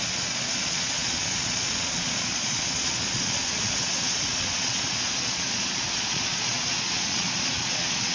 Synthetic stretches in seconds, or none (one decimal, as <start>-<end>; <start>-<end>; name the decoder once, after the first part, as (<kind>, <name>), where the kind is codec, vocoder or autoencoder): 0.0-8.1 (vocoder, Vocos)